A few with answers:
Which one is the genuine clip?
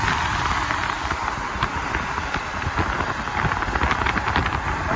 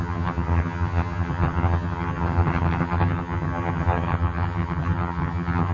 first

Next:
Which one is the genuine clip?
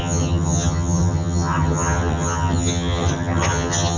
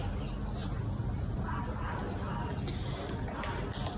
second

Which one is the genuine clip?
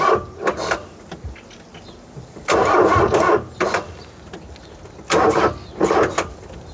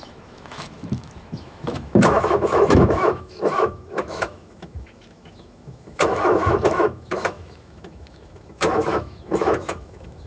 first